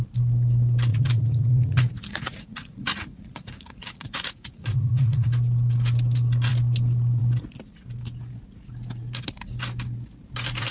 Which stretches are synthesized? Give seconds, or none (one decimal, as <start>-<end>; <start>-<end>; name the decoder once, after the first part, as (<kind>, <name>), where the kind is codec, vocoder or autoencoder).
0.9-5.3 (vocoder, Vocos)